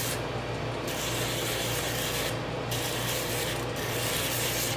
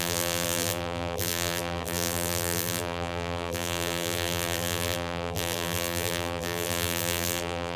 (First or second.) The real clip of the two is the first